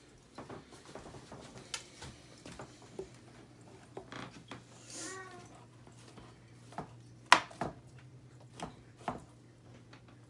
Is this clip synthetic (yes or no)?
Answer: no